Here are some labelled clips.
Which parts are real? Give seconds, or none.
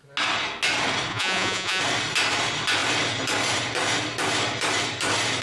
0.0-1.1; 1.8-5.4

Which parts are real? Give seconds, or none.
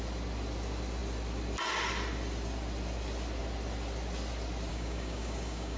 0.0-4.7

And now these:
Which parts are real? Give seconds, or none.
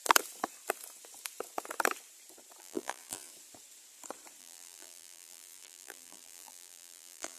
0.0-2.6; 3.3-4.4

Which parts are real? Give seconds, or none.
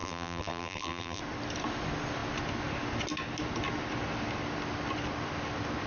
1.2-5.9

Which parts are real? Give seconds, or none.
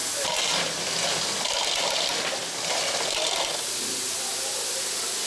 0.0-5.3